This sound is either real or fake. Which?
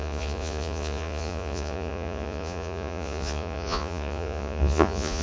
fake